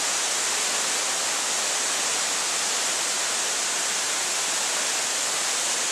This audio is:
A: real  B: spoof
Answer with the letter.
A